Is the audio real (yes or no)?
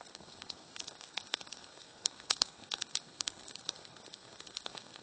no